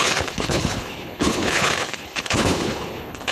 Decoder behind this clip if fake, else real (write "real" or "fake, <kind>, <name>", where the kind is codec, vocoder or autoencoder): fake, codec, HILCodec